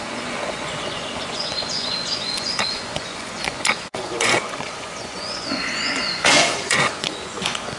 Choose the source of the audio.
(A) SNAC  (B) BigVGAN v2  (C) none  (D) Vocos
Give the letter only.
D